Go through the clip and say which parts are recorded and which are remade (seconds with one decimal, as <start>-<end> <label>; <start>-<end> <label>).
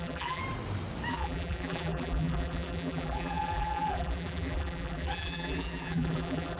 0.0-0.4 remade; 0.4-1.1 recorded; 1.1-6.6 remade